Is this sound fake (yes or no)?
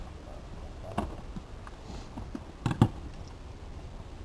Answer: no